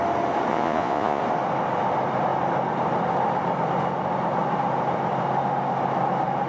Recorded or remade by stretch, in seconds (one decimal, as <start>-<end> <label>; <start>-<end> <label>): 0.0-0.5 recorded; 0.5-1.2 remade; 1.2-6.5 recorded